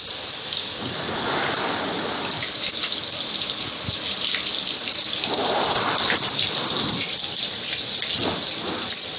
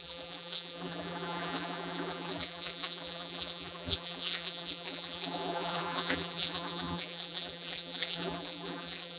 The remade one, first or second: second